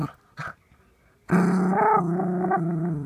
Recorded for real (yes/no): yes